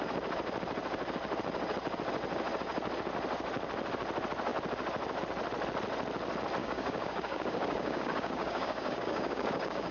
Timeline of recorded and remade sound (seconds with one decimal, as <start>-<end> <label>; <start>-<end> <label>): 0.0-6.6 recorded; 6.6-9.9 remade